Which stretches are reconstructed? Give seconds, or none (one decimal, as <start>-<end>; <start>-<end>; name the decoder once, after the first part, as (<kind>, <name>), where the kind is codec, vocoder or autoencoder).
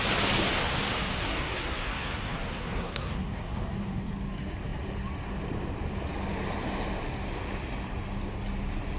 1.2-4.1 (codec, SNAC)